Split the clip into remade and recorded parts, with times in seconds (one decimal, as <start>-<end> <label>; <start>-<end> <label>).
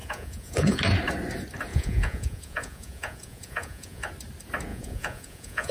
0.0-0.8 remade; 0.8-1.7 recorded; 1.7-4.1 remade; 4.1-4.7 recorded; 4.7-5.7 remade